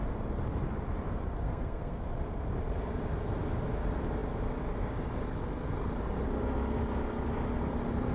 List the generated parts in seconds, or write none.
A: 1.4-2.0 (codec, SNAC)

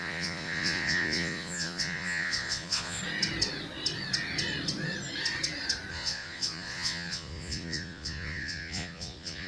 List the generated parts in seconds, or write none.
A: 0.0-3.0 (vocoder, Vocos); 5.9-9.5

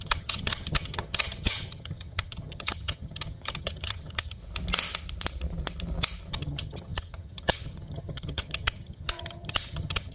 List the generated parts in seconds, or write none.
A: 0.0-4.4 (vocoder, HiFi-GAN); 6.3-10.1

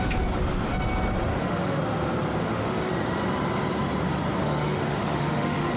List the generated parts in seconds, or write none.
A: 1.3-1.8 (autoencoder, DAC-VAE); 2.4-2.9; 4.4-5.8

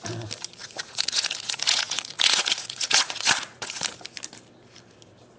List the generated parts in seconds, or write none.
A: 0.6-3.8 (vocoder, Vocos)

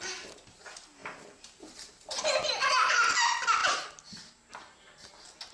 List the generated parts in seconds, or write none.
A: none